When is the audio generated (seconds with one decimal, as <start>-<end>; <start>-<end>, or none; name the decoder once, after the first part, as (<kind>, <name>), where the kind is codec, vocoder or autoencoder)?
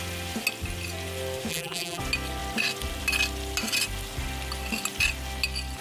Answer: 1.5-2.0 (vocoder, BigVGAN v2)